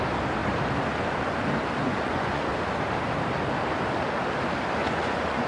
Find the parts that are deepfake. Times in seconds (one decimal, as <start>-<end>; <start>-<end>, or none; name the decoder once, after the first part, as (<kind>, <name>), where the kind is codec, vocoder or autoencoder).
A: 1.8-2.5 (vocoder, Vocos); 4.8-5.5